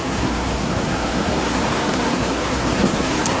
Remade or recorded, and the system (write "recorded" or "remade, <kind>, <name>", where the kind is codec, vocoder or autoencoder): remade, codec, SNAC